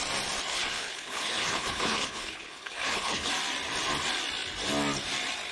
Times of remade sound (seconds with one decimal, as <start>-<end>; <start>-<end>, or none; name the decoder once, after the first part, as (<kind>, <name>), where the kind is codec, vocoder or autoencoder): 0.5-3.3 (codec, HILCodec)